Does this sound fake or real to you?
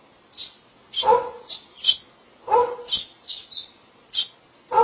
real